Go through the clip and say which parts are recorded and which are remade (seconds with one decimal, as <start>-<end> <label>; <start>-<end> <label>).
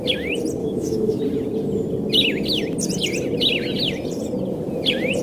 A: 0.0-0.6 recorded; 0.6-1.2 remade; 1.2-5.2 recorded